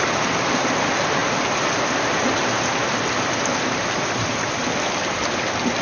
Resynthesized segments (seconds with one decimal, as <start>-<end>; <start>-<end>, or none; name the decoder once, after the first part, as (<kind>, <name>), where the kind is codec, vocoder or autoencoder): none